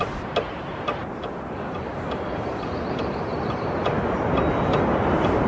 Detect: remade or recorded recorded